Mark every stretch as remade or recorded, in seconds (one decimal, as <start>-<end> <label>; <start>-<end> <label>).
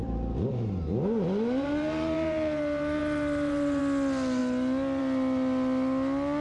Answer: 0.0-3.8 remade; 3.8-6.4 recorded